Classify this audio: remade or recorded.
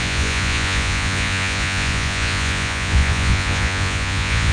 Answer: remade